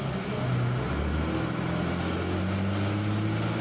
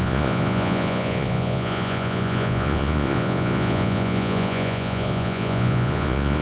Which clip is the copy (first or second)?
second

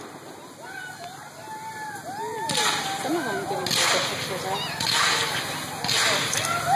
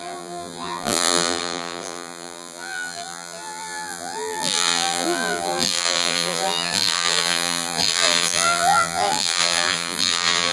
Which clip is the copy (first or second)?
second